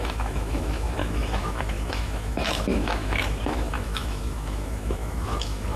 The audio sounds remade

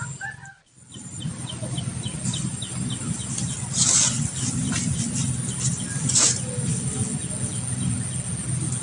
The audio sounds recorded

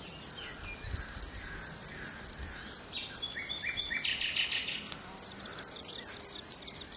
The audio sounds recorded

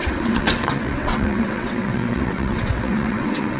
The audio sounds remade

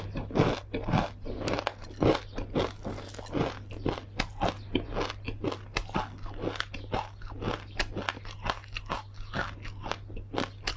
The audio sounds recorded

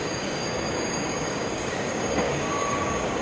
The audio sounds remade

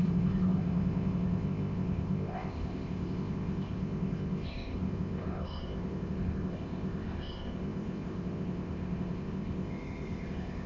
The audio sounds remade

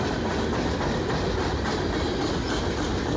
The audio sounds recorded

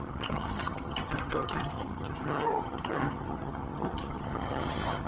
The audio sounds remade